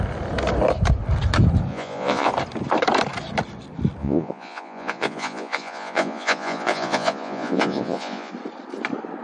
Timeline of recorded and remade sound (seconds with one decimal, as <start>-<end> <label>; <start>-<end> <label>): 0.0-1.7 recorded; 1.7-2.3 remade; 2.3-4.0 recorded; 4.0-8.3 remade; 8.3-9.2 recorded